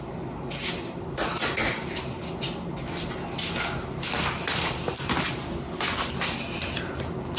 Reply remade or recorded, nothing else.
recorded